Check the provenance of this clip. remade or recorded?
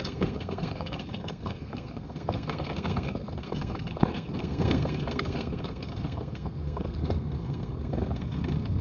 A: remade